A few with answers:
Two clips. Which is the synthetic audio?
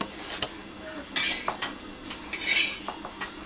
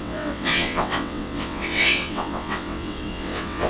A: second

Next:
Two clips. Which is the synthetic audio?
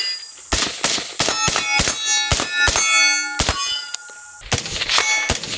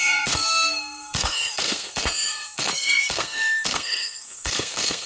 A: second